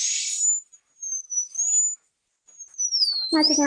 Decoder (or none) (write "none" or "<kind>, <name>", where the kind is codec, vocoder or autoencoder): none